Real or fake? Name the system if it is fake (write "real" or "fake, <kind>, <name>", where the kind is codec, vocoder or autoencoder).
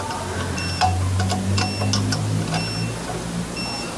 real